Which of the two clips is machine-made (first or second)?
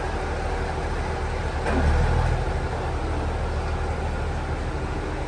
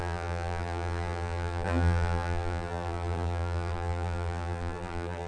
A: second